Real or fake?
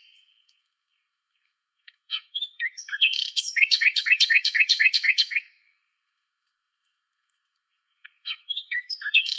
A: fake